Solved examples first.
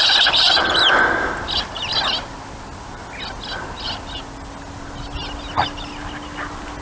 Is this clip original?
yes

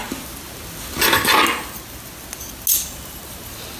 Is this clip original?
yes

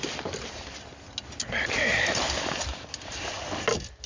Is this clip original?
yes